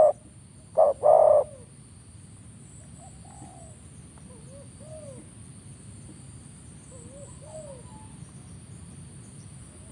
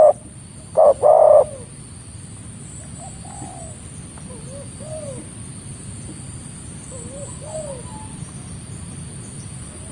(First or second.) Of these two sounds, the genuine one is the first